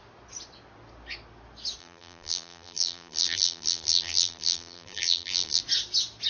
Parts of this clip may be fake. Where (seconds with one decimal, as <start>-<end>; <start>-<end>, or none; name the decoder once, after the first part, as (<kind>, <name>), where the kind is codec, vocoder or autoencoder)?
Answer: 1.8-5.6 (vocoder, BigVGAN v2)